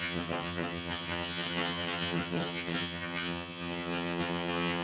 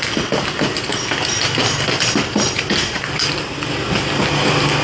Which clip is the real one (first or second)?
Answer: second